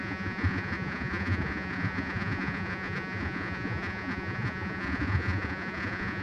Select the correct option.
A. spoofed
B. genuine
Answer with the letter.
A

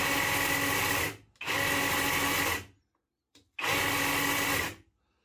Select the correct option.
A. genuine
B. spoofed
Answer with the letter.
A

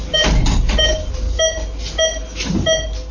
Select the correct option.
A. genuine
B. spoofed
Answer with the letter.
A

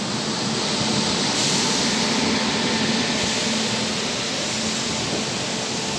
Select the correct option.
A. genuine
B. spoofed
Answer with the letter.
A